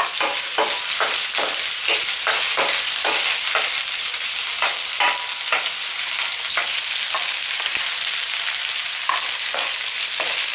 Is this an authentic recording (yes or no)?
no